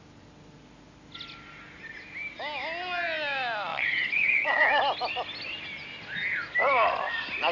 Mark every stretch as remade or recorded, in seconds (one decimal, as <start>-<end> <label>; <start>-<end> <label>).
0.0-3.7 recorded; 3.7-4.8 remade; 4.8-7.5 recorded